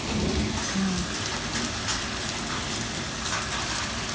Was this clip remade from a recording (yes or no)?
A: no